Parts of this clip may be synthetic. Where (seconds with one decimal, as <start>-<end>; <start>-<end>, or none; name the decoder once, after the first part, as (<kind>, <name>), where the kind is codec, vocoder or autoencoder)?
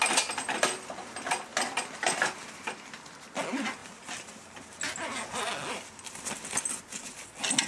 none